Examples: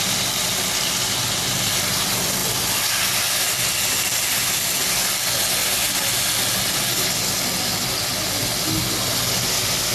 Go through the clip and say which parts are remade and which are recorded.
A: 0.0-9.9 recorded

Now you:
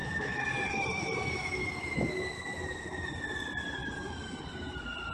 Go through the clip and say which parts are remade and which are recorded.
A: 0.0-3.1 remade; 3.1-3.8 recorded; 3.8-4.4 remade; 4.4-5.1 recorded

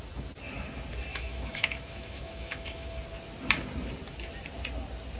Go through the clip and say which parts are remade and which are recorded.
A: 0.0-1.1 recorded; 1.1-3.0 remade; 3.0-5.2 recorded

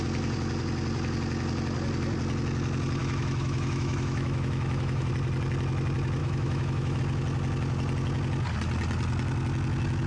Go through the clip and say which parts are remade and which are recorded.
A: 0.0-3.0 recorded; 3.0-5.1 remade; 5.1-6.2 recorded; 6.2-7.0 remade; 7.0-10.1 recorded

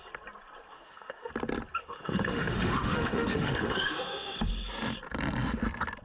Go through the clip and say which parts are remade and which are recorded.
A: 0.0-0.7 recorded; 0.7-1.3 remade; 1.3-1.8 recorded; 1.8-4.5 remade; 4.5-6.0 recorded

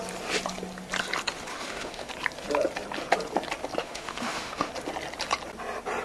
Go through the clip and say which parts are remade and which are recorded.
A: 0.0-1.5 recorded; 1.5-2.1 remade; 2.1-3.8 recorded; 3.8-4.7 remade; 4.7-6.0 recorded